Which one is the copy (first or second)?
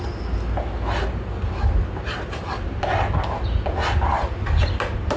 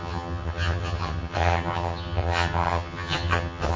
second